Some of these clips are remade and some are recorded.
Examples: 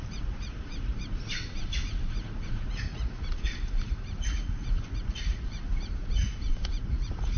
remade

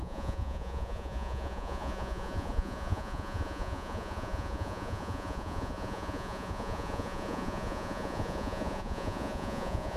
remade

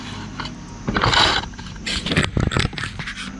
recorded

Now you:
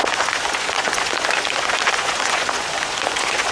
remade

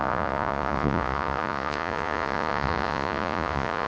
remade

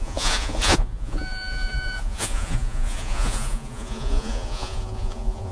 remade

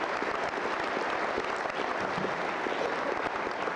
recorded